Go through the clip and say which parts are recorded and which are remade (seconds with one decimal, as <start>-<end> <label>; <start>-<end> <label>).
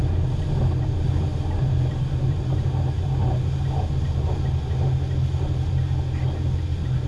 0.0-7.1 recorded